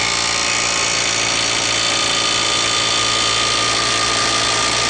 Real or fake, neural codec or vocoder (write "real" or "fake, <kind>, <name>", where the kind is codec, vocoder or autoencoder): real